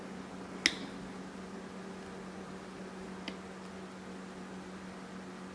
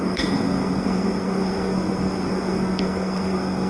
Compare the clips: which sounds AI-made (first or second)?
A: second